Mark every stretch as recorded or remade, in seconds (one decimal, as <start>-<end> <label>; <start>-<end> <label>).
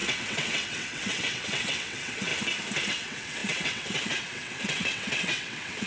0.0-2.3 remade; 2.3-2.9 recorded; 2.9-5.9 remade